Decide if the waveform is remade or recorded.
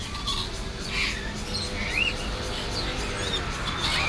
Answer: recorded